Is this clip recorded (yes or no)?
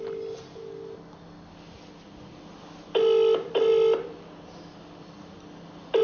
yes